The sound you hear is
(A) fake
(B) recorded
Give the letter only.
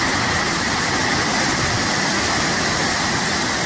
B